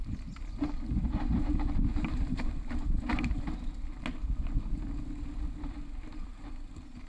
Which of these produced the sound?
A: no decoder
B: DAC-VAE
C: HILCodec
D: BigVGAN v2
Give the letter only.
A